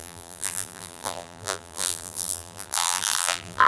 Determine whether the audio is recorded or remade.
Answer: remade